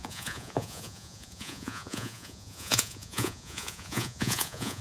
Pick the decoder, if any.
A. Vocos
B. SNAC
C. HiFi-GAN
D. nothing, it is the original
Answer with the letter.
A